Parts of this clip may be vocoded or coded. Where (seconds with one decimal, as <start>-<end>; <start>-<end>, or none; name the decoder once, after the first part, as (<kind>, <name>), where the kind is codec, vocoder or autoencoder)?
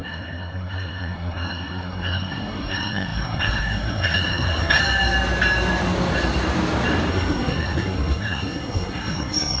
0.0-4.8 (codec, SNAC); 7.1-9.6